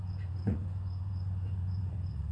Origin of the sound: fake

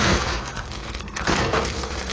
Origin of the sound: fake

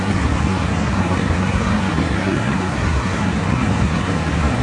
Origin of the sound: fake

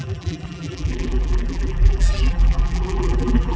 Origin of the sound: fake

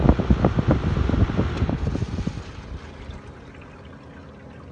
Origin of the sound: real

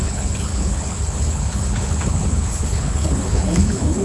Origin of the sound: fake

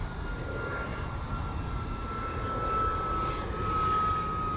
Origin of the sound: real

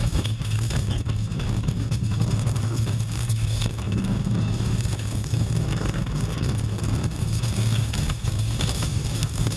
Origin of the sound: fake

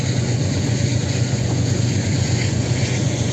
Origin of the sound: fake